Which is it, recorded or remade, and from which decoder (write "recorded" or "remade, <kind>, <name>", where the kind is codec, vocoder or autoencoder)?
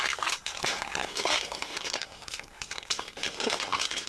remade, codec, SNAC